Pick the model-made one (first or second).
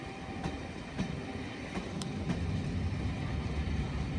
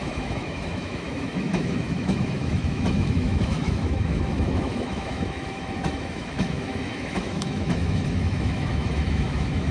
second